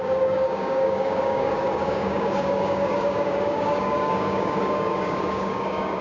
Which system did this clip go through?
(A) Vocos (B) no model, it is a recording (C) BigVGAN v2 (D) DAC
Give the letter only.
D